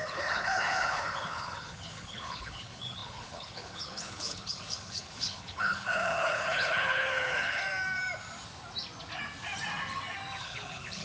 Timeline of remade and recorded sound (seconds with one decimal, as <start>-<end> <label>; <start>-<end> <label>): 0.0-7.6 remade; 7.6-10.4 recorded; 10.4-11.0 remade